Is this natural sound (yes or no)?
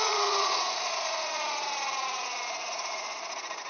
no